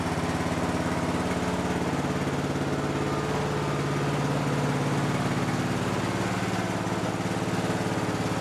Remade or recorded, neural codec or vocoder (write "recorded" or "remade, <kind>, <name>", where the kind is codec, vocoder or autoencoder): recorded